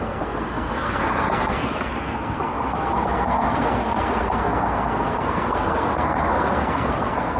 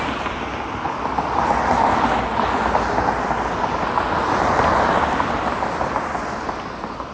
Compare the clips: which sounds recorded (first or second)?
second